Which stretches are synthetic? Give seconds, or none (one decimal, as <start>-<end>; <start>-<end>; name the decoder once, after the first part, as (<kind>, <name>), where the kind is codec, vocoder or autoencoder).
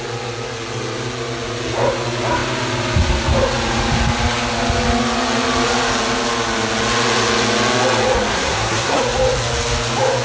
8.3-9.0 (codec, SNAC)